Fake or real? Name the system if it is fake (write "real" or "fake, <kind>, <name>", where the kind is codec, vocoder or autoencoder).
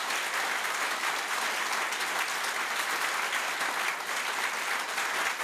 real